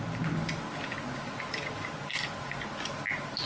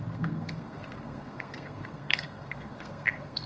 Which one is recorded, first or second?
first